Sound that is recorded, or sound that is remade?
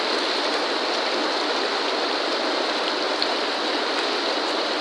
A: recorded